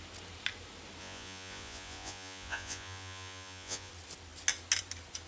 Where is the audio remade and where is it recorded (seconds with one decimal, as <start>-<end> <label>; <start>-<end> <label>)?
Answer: 0.0-1.0 recorded; 1.0-3.9 remade; 3.9-5.3 recorded